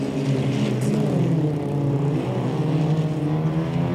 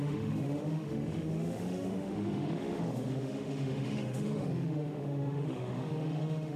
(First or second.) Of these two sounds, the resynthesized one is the second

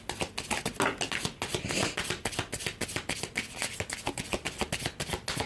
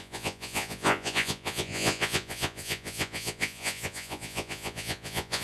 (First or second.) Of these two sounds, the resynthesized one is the second